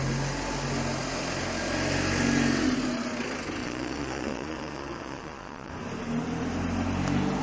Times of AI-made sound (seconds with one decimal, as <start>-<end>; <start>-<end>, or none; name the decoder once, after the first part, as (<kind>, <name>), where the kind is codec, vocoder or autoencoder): 3.6-5.7 (vocoder, Vocos)